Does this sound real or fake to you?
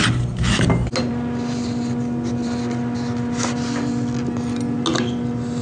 real